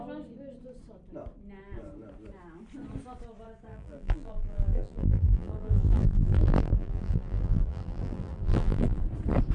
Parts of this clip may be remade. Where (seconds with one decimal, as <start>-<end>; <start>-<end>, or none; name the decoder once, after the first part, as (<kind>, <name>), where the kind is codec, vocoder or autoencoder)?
3.7-9.0 (vocoder, BigVGAN v2)